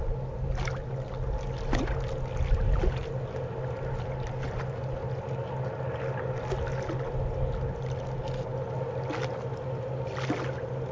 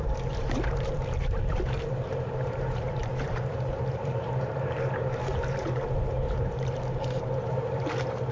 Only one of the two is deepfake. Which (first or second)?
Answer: second